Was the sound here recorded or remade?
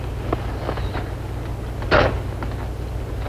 recorded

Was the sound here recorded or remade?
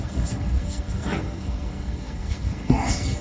remade